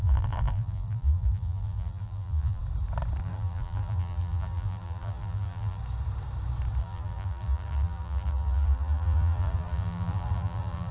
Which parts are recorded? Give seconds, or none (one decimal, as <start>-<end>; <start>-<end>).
2.6-3.2; 5.8-6.8